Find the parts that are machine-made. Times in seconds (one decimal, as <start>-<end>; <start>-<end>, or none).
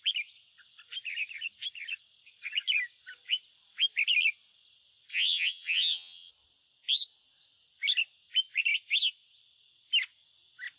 5.1-6.3